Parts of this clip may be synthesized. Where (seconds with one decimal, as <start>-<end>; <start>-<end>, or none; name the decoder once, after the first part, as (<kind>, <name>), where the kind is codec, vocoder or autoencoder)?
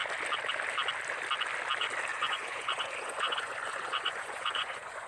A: 2.1-5.1 (vocoder, Vocos)